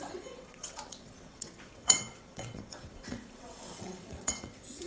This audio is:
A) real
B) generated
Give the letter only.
B